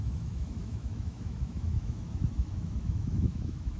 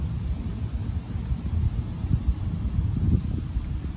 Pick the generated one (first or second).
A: first